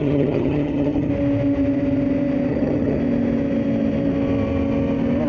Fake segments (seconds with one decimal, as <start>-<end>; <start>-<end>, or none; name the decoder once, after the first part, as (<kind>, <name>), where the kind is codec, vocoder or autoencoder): 0.0-1.1 (vocoder, HiFi-GAN); 2.5-3.0